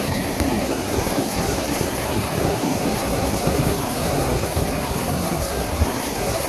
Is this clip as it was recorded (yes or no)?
no